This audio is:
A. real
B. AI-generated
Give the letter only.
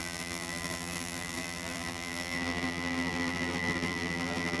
B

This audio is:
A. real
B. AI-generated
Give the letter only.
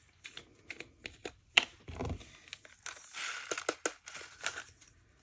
A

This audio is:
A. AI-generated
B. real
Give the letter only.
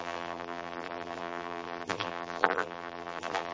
A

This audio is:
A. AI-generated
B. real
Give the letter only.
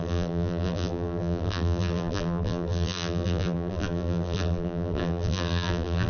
A